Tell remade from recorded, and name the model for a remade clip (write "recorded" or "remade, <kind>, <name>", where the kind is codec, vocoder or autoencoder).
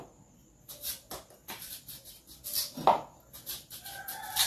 recorded